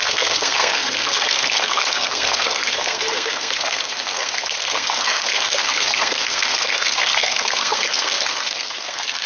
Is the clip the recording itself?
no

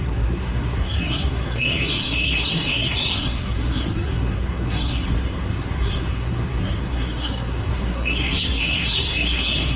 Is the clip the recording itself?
no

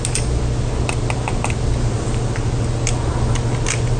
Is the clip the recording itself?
yes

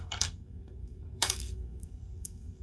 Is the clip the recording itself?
no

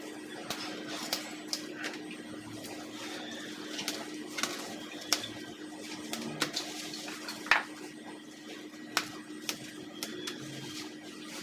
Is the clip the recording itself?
yes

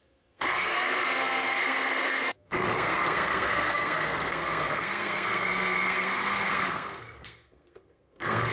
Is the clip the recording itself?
no